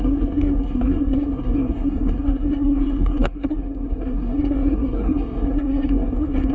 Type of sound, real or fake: fake